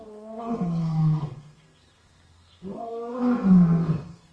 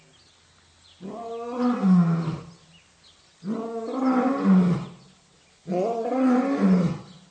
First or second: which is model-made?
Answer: first